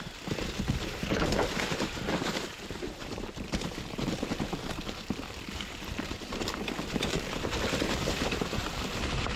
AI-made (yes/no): yes